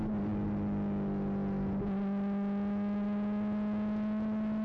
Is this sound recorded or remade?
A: recorded